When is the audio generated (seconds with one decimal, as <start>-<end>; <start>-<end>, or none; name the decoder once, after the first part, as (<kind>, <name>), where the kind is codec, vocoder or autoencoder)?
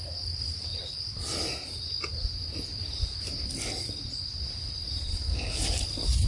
5.1-5.6 (codec, HILCodec)